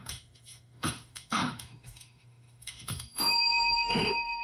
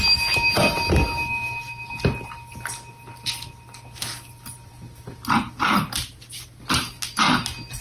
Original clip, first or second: second